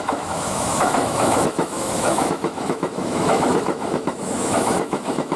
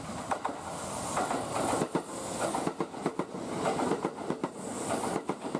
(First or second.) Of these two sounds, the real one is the second